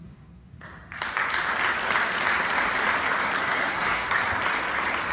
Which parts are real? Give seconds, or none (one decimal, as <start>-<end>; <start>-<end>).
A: 0.6-3.4; 4.2-5.1